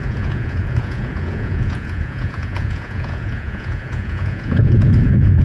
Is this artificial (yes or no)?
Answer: yes